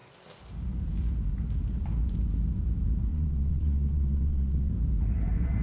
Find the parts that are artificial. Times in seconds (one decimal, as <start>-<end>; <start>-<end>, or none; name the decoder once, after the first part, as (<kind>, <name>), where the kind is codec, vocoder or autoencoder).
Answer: 3.1-4.7 (vocoder, WaveNeXt)